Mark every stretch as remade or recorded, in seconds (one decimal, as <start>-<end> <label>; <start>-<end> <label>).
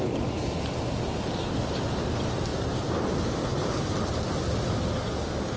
0.0-5.6 recorded